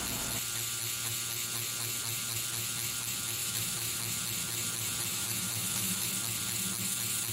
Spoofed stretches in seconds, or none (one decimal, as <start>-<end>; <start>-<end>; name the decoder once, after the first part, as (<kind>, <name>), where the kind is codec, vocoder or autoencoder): 3.4-4.0 (autoencoder, DAC-VAE); 5.1-6.1